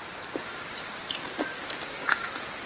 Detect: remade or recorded recorded